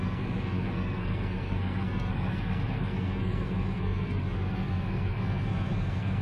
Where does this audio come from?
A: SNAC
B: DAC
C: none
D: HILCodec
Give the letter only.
A